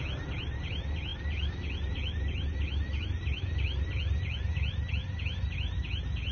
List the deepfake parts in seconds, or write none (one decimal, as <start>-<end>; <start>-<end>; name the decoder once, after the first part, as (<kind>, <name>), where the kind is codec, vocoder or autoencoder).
none